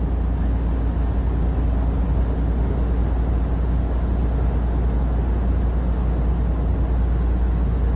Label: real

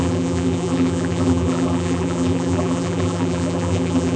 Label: fake